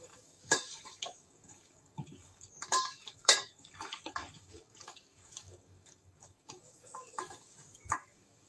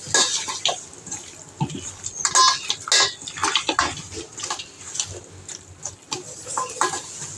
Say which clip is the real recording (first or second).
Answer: second